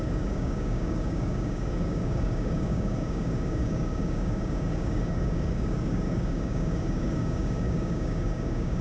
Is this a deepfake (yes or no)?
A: yes